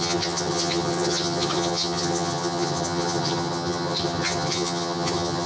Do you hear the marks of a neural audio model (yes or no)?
yes